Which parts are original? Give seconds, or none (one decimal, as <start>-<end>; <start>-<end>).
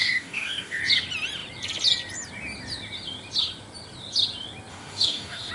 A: 0.8-4.7